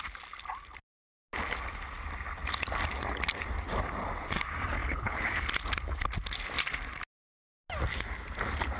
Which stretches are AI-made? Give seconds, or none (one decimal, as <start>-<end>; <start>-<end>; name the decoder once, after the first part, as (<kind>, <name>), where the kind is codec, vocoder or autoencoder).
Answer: 4.8-5.4 (codec, HILCodec)